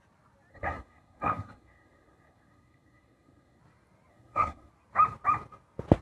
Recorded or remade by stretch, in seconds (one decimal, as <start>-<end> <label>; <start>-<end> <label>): 0.0-0.5 recorded; 0.5-3.6 remade; 3.6-4.1 recorded; 4.1-4.7 remade; 4.7-6.0 recorded